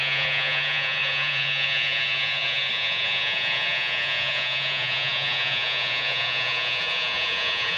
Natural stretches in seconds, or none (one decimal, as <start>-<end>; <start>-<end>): none